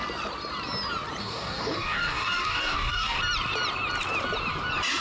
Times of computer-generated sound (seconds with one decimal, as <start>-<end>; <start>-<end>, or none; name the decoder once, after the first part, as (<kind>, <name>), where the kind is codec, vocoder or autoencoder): 1.2-3.2 (codec, DAC)